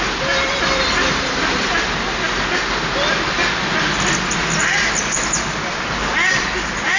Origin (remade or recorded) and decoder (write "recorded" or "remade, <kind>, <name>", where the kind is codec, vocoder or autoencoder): recorded